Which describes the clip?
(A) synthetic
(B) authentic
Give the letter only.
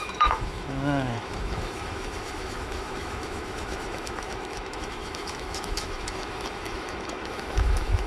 A